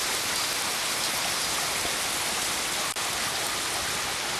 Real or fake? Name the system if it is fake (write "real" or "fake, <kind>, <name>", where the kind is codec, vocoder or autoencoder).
real